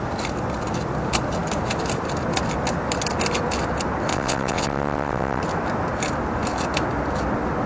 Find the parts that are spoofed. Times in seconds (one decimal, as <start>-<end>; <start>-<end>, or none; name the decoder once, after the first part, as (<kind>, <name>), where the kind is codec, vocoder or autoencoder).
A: 4.1-5.4 (vocoder, WaveNeXt)